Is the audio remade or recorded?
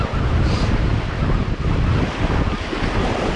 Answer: recorded